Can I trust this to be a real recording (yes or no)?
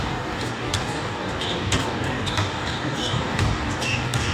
no